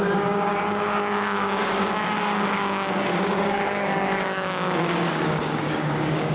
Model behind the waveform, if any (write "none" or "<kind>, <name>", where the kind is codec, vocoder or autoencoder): codec, DAC